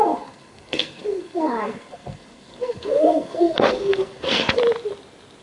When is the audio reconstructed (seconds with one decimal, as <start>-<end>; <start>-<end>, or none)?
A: 0.0-4.6